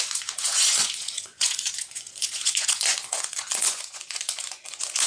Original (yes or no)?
no